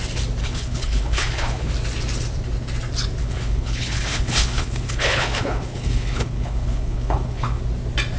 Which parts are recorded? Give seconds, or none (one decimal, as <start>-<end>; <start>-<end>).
0.0-0.4; 1.7-3.2; 7.6-8.2